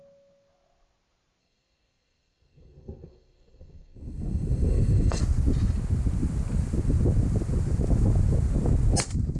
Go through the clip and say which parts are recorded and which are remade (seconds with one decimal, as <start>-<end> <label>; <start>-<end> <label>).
0.0-1.4 recorded; 1.4-5.2 remade; 5.2-9.4 recorded